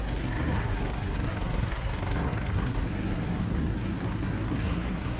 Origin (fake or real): fake